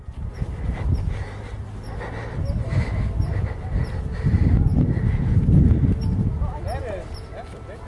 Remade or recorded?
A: recorded